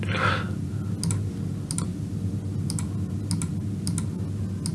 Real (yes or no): yes